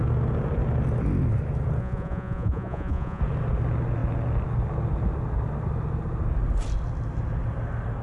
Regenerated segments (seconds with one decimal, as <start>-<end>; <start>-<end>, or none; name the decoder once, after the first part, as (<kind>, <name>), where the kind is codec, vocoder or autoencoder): 1.8-3.2 (vocoder, Vocos)